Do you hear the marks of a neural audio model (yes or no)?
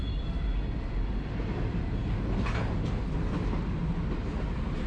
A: no